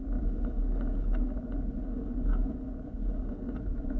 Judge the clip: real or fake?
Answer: real